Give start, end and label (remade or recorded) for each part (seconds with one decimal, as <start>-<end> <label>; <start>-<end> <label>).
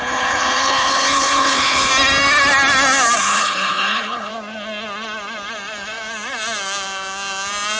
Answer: 0.0-1.9 remade; 1.9-3.2 recorded; 3.2-4.3 remade; 4.3-7.8 recorded